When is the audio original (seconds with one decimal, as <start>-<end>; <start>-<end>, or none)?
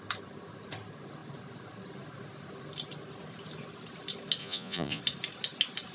0.0-4.4; 5.0-5.9